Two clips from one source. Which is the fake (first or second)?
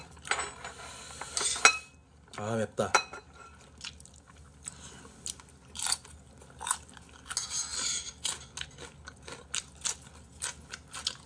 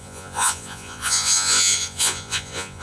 second